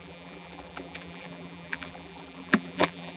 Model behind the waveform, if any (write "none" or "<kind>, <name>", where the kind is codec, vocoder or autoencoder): vocoder, BigVGAN v2